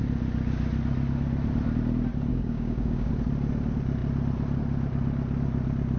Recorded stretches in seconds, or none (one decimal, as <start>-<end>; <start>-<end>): 0.0-2.3; 3.1-6.0